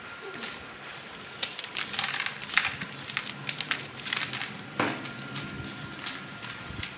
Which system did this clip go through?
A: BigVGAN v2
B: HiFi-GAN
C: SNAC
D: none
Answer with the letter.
D